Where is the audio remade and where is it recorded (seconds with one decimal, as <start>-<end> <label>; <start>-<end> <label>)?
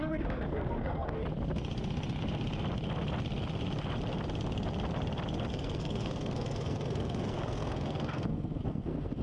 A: 0.0-1.2 remade; 1.2-5.5 recorded; 5.5-9.2 remade